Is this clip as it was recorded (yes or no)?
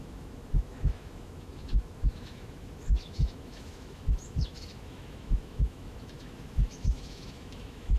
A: no